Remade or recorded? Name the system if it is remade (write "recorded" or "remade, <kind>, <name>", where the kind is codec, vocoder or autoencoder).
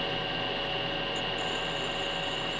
recorded